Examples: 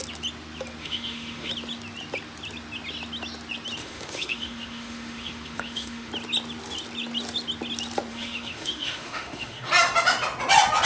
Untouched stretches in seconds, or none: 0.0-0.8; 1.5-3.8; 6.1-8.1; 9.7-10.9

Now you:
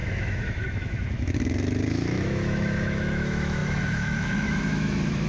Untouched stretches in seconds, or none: none

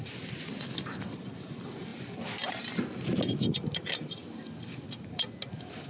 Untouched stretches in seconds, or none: 0.0-5.9

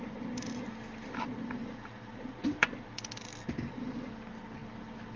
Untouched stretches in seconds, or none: 0.0-5.2

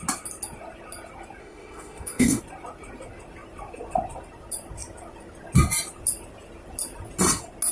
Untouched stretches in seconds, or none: 0.0-1.4; 2.4-7.7

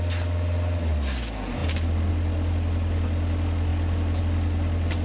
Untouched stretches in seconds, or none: 0.0-5.0

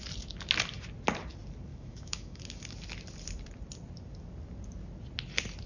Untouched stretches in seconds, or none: 0.0-1.7; 2.4-5.7